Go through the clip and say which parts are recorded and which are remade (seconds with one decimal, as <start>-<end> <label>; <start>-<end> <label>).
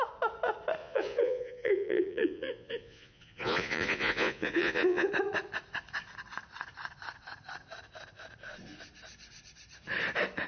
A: 0.0-0.8 recorded; 0.8-5.1 remade; 5.1-10.5 recorded